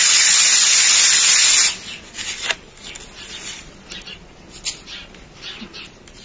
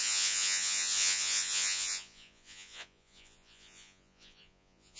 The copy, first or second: second